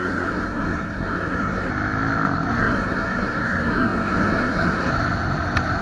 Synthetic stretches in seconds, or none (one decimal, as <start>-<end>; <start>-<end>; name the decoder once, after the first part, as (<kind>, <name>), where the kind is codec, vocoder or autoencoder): 0.0-1.7 (codec, SNAC); 2.6-4.9